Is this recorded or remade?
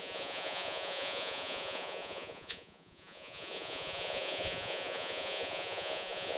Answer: remade